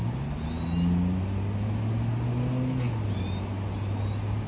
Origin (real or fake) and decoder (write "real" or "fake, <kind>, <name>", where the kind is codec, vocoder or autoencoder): real